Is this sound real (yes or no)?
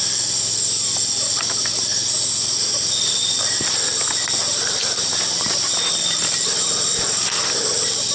yes